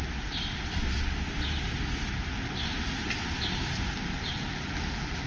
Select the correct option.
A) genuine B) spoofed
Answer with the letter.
A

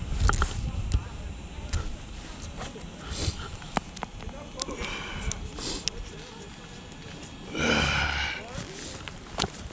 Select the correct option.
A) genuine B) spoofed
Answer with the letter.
A